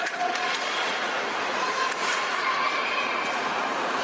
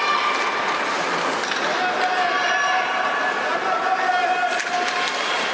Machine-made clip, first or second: first